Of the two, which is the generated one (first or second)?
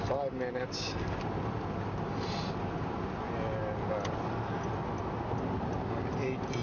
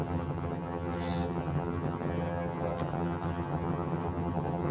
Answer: second